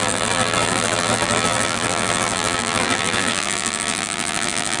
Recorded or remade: remade